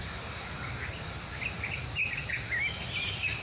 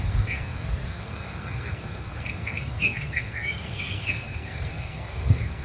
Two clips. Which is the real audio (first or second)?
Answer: first